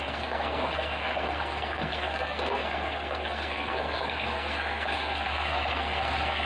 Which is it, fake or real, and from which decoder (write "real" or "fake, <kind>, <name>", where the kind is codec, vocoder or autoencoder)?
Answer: fake, codec, SNAC